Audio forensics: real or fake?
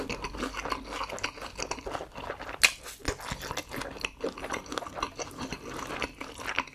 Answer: real